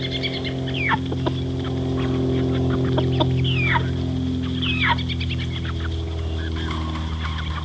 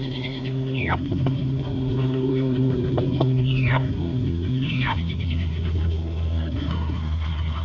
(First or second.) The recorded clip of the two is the first